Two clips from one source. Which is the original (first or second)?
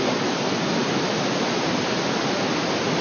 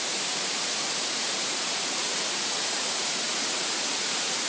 first